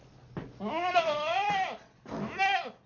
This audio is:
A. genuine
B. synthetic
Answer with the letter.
A